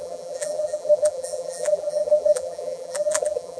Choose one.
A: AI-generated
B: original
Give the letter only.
A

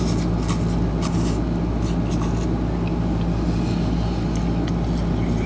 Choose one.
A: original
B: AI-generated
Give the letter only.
A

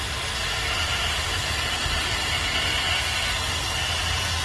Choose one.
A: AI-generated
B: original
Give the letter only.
B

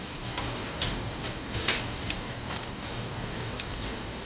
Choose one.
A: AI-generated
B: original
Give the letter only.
A